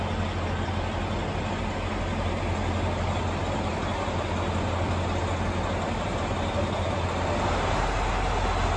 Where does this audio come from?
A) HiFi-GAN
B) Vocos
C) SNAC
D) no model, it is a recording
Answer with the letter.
D